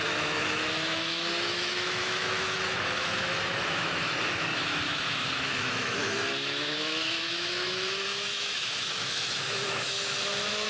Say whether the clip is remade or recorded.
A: remade